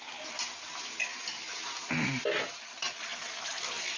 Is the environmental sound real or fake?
real